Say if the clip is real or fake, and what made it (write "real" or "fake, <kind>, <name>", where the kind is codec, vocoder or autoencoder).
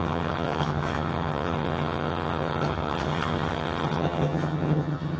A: fake, vocoder, HiFi-GAN